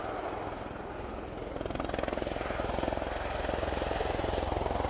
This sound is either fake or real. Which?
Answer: real